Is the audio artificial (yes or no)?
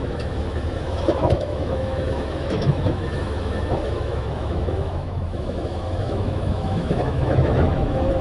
yes